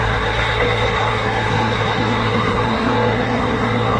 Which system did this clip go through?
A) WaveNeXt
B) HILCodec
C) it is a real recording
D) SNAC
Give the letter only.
D